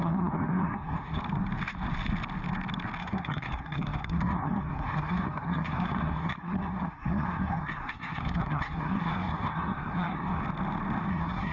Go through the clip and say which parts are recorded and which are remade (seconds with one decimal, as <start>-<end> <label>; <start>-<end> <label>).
0.0-1.2 remade; 1.2-3.0 recorded; 3.0-10.4 remade; 10.4-11.1 recorded; 11.1-11.5 remade